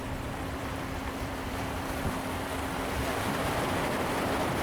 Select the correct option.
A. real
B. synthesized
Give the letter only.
B